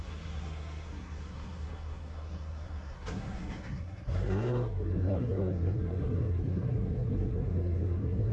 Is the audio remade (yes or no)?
yes